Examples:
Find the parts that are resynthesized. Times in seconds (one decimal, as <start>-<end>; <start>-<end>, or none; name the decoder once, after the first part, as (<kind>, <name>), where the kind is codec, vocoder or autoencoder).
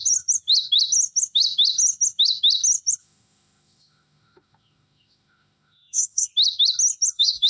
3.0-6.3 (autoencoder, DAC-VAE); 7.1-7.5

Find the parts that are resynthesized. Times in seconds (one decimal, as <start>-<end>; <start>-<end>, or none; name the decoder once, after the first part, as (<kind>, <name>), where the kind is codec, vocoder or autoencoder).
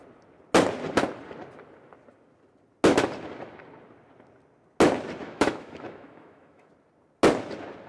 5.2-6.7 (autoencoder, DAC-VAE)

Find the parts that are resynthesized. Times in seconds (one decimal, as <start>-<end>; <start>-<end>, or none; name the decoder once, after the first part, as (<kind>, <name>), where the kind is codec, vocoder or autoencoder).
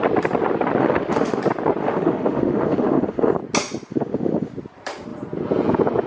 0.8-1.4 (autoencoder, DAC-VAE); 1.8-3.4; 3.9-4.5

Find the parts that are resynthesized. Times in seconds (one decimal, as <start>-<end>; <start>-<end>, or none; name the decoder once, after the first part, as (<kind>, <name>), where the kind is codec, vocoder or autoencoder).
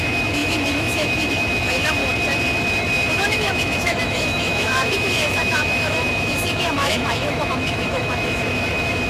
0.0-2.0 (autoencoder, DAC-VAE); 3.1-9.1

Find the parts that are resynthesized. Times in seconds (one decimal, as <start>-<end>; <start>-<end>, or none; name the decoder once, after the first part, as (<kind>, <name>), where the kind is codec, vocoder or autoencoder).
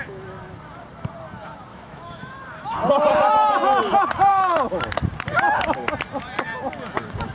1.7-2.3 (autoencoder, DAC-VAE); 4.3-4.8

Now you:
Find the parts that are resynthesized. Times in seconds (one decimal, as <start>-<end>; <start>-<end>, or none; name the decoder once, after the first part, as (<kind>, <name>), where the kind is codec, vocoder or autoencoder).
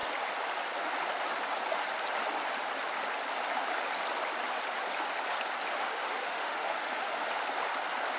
5.7-7.3 (autoencoder, DAC-VAE)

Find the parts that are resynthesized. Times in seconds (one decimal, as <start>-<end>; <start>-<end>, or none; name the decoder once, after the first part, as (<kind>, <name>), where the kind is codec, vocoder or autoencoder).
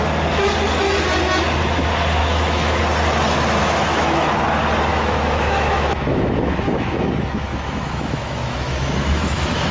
2.2-2.8 (autoencoder, DAC-VAE); 3.6-4.3; 4.9-9.7